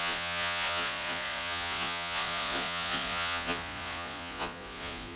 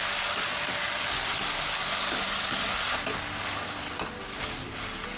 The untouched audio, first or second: second